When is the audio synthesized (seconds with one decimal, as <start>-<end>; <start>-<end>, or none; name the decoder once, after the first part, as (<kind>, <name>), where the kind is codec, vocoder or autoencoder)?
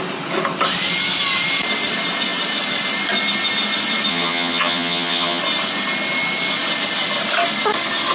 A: 4.1-5.4 (vocoder, HiFi-GAN)